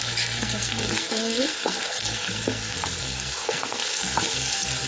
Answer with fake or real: fake